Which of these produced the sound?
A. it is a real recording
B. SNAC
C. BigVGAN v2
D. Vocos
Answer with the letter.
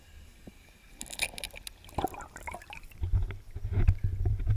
A